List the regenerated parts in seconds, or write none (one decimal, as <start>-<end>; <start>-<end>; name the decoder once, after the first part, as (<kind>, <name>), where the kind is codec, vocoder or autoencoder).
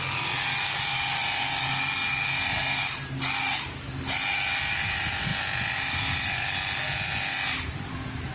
none